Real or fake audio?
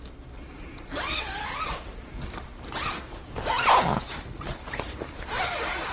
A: real